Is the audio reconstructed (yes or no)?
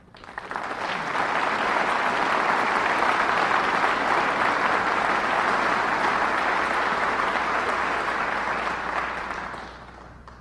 no